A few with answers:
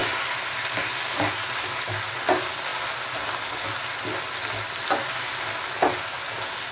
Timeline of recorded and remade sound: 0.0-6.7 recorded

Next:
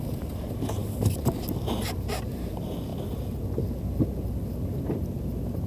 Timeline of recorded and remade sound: 0.0-5.7 recorded

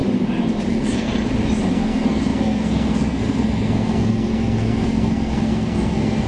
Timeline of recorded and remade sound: 0.0-0.7 recorded; 0.7-1.1 remade; 1.1-1.7 recorded; 1.7-6.3 remade